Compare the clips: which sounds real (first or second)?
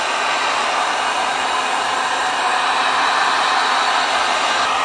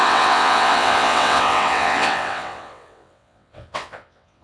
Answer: first